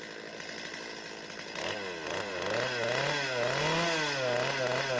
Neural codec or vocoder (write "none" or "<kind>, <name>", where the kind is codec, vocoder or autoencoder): none